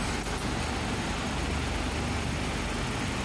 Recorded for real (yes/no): yes